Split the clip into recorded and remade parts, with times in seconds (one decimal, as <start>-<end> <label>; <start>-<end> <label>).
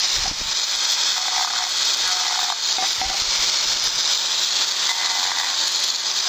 0.0-6.3 recorded